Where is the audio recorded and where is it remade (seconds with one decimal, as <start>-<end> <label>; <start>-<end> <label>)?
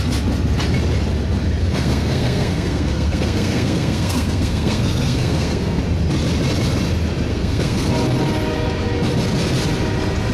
0.0-1.6 recorded; 1.6-5.8 remade; 5.8-7.3 recorded; 7.3-7.9 remade; 7.9-10.3 recorded